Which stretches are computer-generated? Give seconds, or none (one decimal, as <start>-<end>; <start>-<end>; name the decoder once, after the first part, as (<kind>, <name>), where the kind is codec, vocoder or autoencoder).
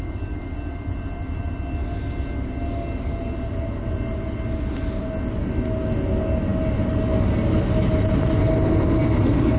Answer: none